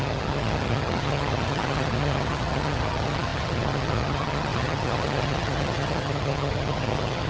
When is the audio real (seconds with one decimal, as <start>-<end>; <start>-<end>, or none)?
none